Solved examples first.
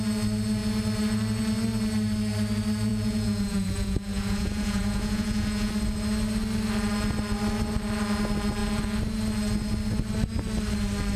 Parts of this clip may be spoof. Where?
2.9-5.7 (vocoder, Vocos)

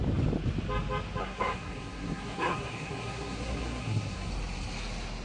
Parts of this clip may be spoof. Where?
1.2-4.3 (codec, SNAC)

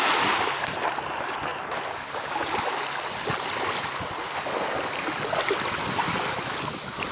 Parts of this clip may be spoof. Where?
none

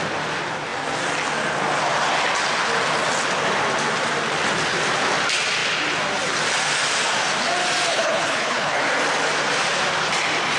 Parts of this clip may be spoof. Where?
7.9-8.8 (codec, HILCodec)

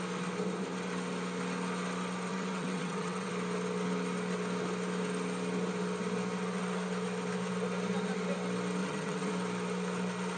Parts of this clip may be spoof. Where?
2.3-3.3 (vocoder, WaveNeXt); 8.8-9.3

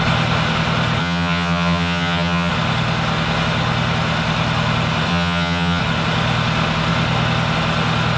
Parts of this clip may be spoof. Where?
1.0-2.5 (vocoder, HiFi-GAN); 5.1-5.8